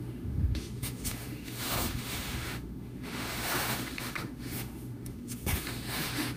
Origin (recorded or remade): remade